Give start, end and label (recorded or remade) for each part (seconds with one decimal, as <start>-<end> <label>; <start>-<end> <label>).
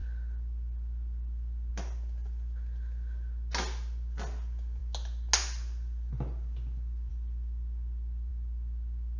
0.0-9.2 recorded